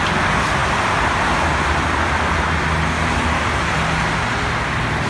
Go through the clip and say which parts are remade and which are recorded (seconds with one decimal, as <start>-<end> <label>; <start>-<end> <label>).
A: 0.0-5.1 recorded